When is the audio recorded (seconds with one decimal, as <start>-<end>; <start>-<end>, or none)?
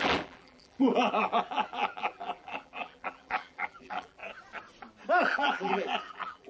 4.2-5.2